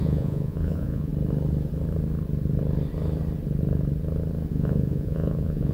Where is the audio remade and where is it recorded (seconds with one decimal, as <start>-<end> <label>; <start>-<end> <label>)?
0.0-1.1 remade; 1.1-4.5 recorded; 4.5-5.7 remade